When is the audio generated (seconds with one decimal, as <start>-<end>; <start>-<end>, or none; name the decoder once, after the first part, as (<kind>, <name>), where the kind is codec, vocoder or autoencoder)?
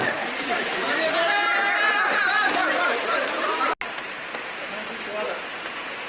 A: none